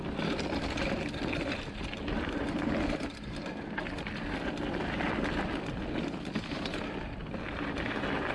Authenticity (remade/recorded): recorded